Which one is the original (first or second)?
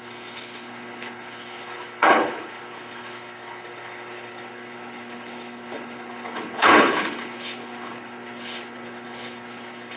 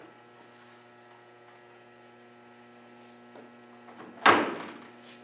second